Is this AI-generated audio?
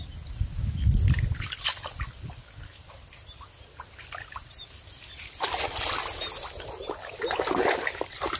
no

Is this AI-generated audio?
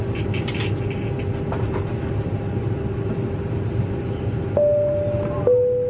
no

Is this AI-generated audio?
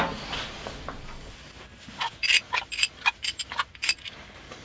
no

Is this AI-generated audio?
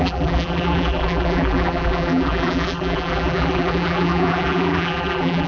yes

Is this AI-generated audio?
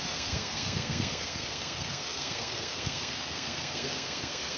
yes